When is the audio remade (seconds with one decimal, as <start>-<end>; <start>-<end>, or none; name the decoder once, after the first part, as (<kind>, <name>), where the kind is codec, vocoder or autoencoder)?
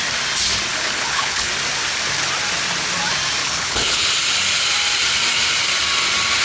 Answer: 0.7-1.5 (codec, HILCodec); 3.4-4.1